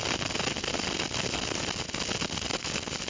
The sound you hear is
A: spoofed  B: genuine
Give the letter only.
B